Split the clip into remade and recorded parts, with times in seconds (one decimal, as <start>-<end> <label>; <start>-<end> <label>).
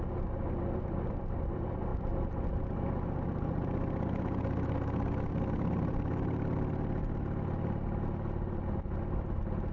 0.0-9.7 recorded